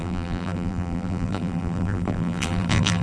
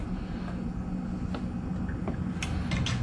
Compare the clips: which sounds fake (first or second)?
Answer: first